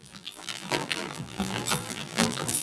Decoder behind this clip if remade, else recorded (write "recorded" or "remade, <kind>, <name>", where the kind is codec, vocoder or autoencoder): remade, vocoder, BigVGAN v2